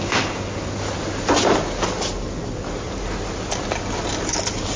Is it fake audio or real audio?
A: real